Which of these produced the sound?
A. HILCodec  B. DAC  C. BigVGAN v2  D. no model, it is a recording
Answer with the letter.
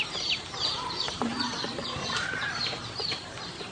C